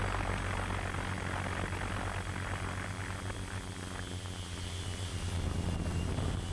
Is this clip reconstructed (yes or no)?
no